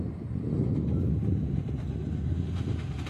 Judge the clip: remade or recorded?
recorded